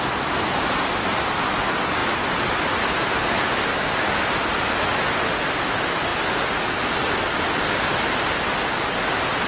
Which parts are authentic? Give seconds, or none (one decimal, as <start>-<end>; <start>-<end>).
0.0-9.5